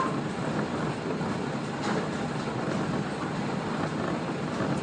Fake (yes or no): no